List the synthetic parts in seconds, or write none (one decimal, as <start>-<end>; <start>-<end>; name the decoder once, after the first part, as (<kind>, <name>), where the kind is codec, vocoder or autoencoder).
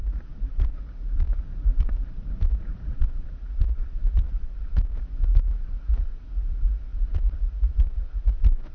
0.0-8.7 (vocoder, Vocos)